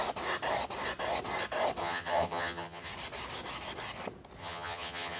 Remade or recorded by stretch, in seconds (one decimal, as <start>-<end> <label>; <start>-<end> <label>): 0.0-1.8 recorded; 1.8-2.9 remade; 2.9-4.4 recorded; 4.4-5.2 remade